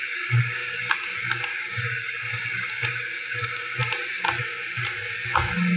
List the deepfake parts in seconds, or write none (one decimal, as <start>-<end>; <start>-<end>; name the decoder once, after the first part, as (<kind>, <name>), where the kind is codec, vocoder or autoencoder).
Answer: 0.0-0.9 (codec, DAC); 1.5-3.8